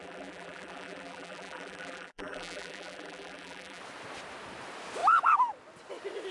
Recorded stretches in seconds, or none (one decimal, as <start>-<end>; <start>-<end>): 3.8-6.3